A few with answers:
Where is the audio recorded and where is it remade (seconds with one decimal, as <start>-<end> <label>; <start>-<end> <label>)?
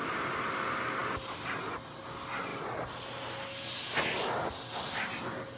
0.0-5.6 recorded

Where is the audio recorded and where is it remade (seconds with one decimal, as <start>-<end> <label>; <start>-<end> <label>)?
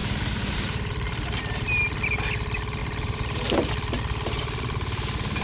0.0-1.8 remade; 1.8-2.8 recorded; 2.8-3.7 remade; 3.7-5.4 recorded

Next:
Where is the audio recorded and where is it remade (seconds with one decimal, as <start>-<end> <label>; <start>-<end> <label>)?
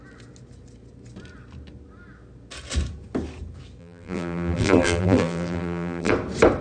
0.0-3.8 recorded; 3.8-6.1 remade; 6.1-6.6 recorded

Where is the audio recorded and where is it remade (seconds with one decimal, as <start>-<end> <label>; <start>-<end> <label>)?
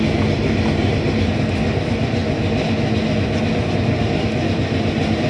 0.0-5.3 recorded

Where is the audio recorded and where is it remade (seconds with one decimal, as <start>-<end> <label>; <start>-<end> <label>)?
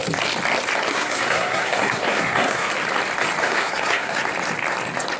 0.0-0.9 recorded; 0.9-2.7 remade; 2.7-3.4 recorded; 3.4-4.2 remade; 4.2-5.2 recorded